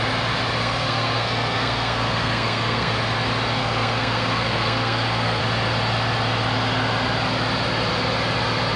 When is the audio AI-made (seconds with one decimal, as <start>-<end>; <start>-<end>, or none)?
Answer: 0.6-2.9; 3.6-5.4